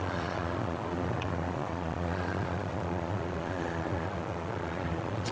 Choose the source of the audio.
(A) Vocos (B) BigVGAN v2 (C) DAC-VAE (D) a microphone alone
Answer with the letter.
A